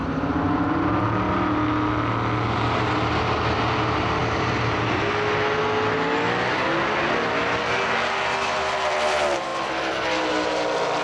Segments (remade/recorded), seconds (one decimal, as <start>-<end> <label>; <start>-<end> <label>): 0.0-0.7 remade; 0.7-4.2 recorded; 4.2-4.8 remade; 4.8-11.0 recorded